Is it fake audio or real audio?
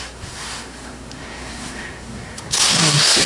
fake